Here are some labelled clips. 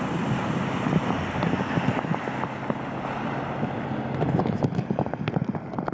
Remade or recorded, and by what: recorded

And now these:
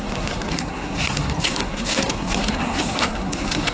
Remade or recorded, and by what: remade, codec, SNAC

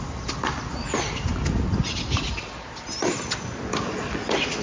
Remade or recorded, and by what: recorded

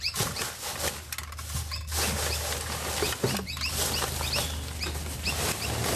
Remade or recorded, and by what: recorded